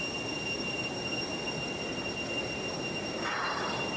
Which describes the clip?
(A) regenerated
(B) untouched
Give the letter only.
B